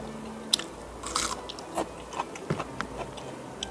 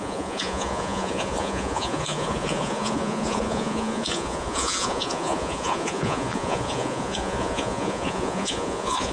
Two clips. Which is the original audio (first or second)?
first